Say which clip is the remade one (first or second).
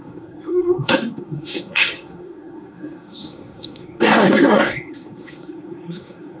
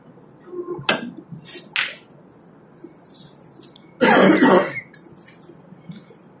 first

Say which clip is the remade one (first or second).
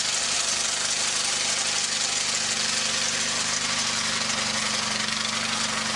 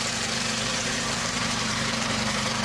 second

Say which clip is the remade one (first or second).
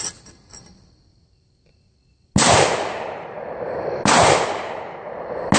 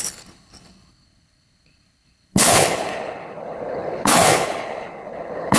second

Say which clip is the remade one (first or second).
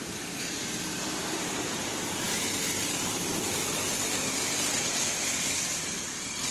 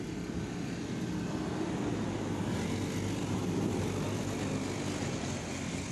first